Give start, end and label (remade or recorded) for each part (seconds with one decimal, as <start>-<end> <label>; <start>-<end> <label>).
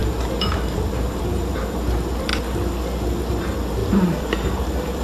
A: 0.0-2.3 remade; 2.3-3.2 recorded; 3.2-5.0 remade